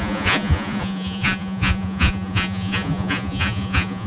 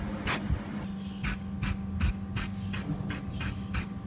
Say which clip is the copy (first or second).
first